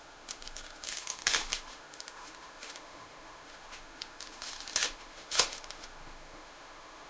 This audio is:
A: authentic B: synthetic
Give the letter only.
B